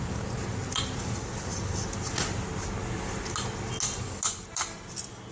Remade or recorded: recorded